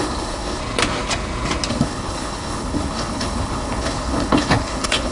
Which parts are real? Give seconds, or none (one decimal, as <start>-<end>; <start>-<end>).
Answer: 0.6-1.7

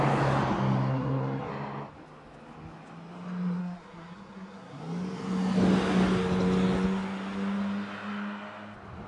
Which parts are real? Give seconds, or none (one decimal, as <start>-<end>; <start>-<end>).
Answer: 0.0-0.9; 1.5-3.6; 4.8-9.1

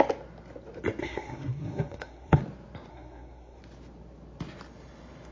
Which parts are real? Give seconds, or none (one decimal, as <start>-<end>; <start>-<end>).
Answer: 0.0-1.0; 2.4-2.9; 3.6-5.3